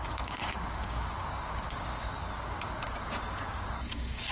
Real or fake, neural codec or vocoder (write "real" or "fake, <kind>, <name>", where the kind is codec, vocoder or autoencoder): fake, codec, DAC